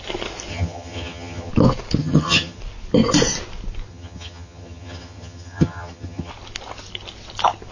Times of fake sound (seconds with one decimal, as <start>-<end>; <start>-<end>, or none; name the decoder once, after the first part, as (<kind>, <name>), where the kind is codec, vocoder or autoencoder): 0.5-1.5 (vocoder, HiFi-GAN); 2.0-2.6; 3.9-6.3